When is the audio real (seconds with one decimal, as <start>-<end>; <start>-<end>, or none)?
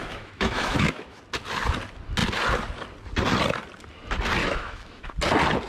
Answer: 1.2-4.4; 5.1-5.7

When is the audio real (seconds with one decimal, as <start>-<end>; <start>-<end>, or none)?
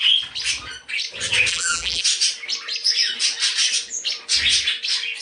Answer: 0.0-1.5; 2.0-5.2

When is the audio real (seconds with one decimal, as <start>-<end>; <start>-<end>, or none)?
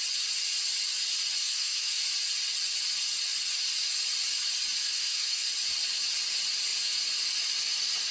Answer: 0.0-1.4; 2.0-4.8; 5.5-8.1